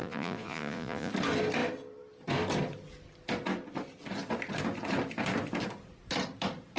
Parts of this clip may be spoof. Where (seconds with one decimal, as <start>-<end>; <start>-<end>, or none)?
0.0-1.1